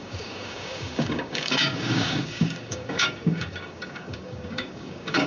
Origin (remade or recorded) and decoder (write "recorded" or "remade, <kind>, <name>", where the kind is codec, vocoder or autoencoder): remade, codec, DAC